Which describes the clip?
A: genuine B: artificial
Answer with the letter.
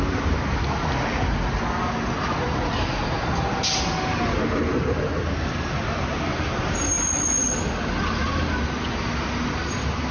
A